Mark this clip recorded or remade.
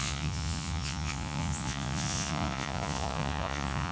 remade